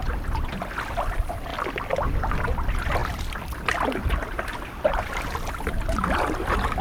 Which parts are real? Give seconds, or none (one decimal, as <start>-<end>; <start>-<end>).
0.0-4.0; 5.0-6.8